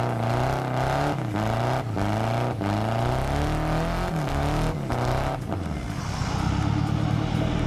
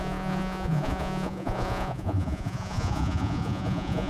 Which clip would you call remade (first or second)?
second